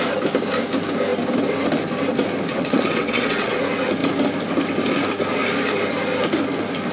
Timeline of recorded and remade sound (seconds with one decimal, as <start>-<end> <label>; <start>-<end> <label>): 0.0-2.5 recorded; 2.5-3.6 remade; 3.6-6.9 recorded